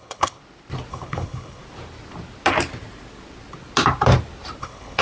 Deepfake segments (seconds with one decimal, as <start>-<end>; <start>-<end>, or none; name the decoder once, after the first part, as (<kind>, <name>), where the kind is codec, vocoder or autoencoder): 0.0-0.4 (codec, HILCodec); 0.9-1.6; 4.6-5.0